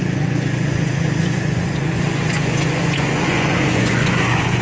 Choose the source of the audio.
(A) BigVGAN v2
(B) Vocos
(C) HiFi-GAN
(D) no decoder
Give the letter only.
B